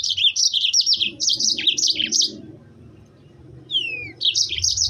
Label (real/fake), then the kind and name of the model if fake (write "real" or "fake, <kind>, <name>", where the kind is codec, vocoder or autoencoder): fake, vocoder, BigVGAN v2